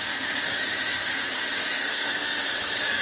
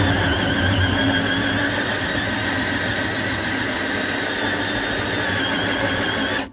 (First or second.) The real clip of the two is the second